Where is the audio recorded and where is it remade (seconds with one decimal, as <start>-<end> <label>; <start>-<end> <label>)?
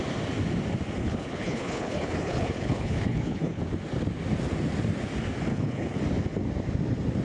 0.0-1.0 recorded; 1.0-3.6 remade; 3.6-5.5 recorded; 5.5-6.0 remade; 6.0-7.2 recorded